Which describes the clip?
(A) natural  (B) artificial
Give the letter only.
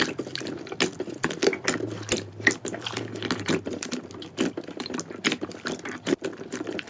A